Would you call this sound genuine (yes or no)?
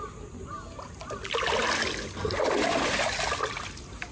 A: yes